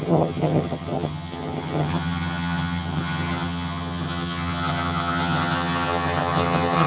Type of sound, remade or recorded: remade